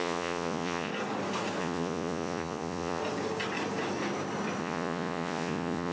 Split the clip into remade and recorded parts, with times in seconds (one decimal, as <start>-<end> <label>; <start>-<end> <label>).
0.0-0.9 remade; 0.9-1.6 recorded; 1.6-3.0 remade; 3.0-4.6 recorded; 4.6-5.9 remade